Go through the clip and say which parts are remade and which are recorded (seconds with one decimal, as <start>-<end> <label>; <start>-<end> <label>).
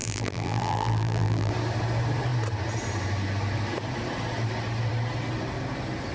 0.0-1.5 remade; 1.5-6.1 recorded